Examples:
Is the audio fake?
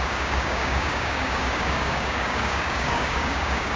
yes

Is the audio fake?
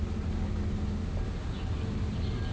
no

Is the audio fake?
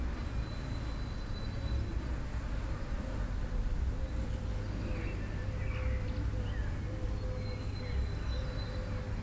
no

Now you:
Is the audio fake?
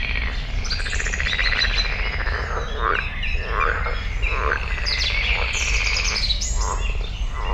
no